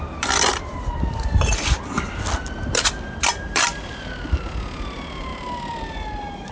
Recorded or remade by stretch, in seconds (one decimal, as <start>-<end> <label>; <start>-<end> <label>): 0.0-3.9 remade; 3.9-5.3 recorded; 5.3-5.8 remade; 5.8-6.5 recorded